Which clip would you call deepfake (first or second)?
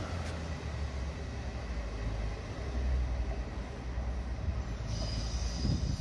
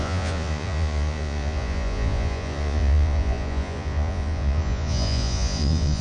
second